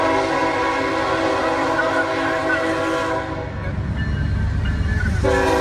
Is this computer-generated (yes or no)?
no